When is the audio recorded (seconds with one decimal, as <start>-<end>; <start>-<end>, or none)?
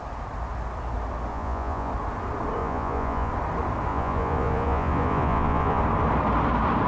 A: 0.0-1.3; 1.9-2.6; 3.3-3.9; 5.8-6.9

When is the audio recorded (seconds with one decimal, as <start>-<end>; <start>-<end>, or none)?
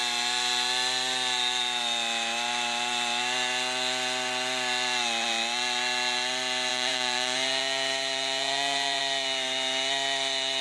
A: 0.0-6.7; 9.0-10.6